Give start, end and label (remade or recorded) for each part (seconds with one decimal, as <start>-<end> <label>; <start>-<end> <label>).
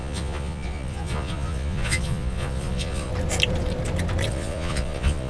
0.0-3.1 remade; 3.1-4.3 recorded; 4.3-5.3 remade